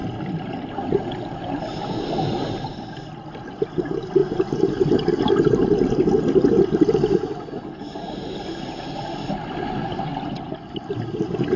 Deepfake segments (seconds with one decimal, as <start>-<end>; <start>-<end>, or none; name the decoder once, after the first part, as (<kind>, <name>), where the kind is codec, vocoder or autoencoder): 0.0-3.6 (vocoder, BigVGAN v2)